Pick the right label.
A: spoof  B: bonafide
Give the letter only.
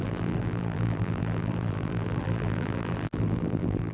A